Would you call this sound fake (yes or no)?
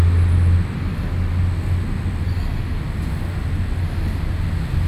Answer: no